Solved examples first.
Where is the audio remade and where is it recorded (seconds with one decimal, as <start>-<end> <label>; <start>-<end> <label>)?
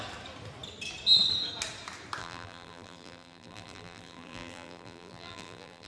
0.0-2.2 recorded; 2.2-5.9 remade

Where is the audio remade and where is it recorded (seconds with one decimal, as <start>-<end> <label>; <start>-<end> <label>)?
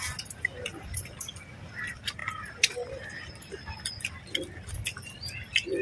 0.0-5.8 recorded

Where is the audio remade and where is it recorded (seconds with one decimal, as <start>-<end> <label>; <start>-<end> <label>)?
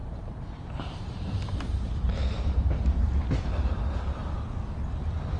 0.0-2.6 remade; 2.6-5.4 recorded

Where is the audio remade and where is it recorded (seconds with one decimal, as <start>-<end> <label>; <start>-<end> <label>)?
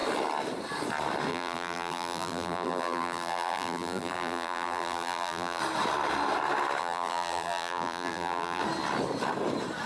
0.0-1.3 recorded; 1.3-5.6 remade; 5.6-6.8 recorded; 6.8-8.6 remade; 8.6-9.9 recorded